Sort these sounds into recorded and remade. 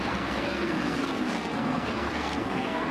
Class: remade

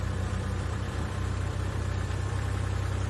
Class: remade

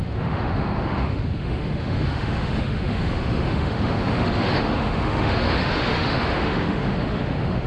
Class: remade